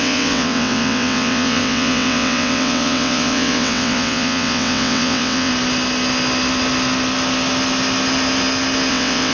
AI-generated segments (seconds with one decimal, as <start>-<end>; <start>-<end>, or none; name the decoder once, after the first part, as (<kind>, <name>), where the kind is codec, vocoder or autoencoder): 0.0-5.5 (vocoder, WaveNeXt); 8.9-9.3